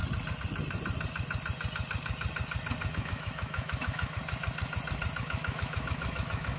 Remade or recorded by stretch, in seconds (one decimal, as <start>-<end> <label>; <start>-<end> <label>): 0.0-2.9 recorded; 2.9-4.2 remade; 4.2-5.2 recorded; 5.2-6.6 remade